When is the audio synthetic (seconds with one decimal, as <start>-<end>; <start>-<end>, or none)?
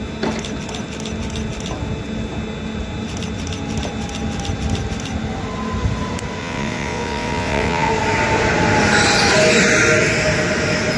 6.4-7.9